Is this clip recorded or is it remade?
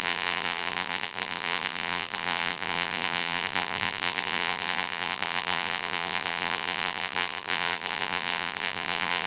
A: remade